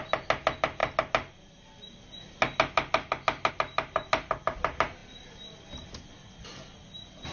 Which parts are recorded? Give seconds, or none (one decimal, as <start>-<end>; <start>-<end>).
0.0-7.3